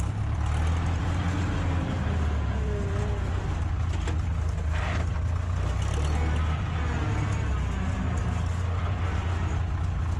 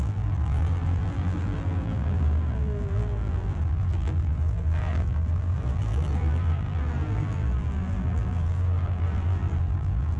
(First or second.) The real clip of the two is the first